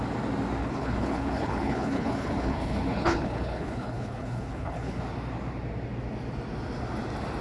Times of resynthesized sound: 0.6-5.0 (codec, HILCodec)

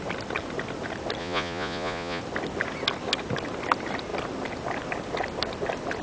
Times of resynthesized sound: 1.2-2.2 (vocoder, Vocos)

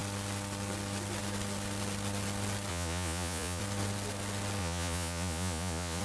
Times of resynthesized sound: 2.7-3.6 (vocoder, Vocos); 4.6-6.0

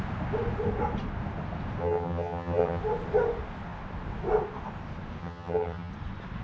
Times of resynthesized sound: 1.8-2.8 (vocoder, HiFi-GAN); 5.2-5.9

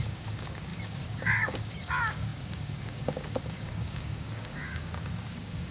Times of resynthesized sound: 0.0-5.7 (codec, DAC)